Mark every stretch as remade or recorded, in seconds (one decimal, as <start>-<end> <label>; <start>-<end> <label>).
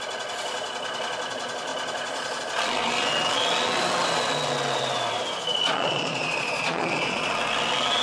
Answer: 0.0-5.4 recorded; 5.4-7.3 remade; 7.3-8.0 recorded